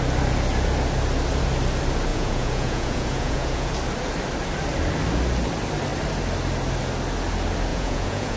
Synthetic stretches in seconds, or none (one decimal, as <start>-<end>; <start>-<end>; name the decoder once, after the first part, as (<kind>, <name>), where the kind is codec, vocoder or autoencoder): 2.1-3.7 (vocoder, Vocos); 7.7-8.4

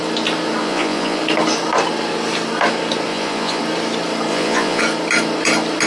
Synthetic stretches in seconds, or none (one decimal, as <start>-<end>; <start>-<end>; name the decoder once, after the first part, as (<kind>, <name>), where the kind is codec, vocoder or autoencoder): 0.6-1.2 (vocoder, Vocos); 3.1-3.6; 4.3-4.8

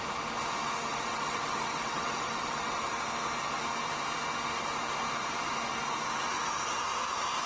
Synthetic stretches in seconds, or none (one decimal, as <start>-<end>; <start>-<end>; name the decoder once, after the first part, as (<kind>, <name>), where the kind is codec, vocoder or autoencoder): 0.9-2.8 (vocoder, WaveNeXt)

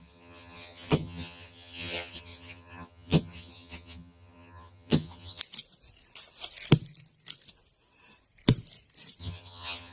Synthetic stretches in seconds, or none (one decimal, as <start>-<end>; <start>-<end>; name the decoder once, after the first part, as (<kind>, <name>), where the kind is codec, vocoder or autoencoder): 0.0-5.4 (vocoder, HiFi-GAN); 9.2-9.9

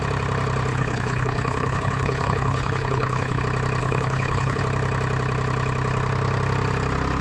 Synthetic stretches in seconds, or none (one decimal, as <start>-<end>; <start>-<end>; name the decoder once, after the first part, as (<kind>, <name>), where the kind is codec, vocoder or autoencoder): 0.7-3.4 (codec, HILCodec); 3.8-4.6